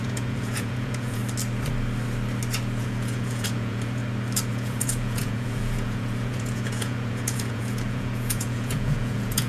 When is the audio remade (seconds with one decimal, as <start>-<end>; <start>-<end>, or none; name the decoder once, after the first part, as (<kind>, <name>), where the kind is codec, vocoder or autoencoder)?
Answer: 0.0-1.2 (vocoder, Vocos); 2.8-4.0; 4.5-9.5